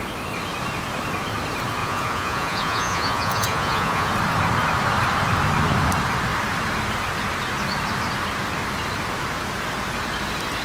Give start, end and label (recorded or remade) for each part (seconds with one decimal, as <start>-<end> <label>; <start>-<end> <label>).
0.0-1.8 recorded; 1.8-4.1 remade; 4.1-10.6 recorded